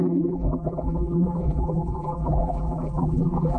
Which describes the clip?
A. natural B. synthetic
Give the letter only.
B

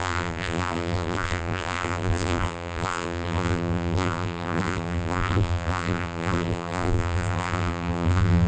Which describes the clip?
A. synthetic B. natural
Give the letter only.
A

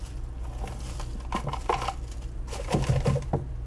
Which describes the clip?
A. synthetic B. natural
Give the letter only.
B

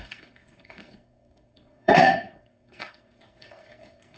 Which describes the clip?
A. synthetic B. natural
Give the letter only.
A